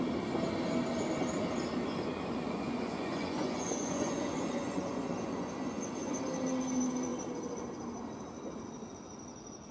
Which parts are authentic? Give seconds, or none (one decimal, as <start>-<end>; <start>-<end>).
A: 0.0-1.9; 6.2-9.7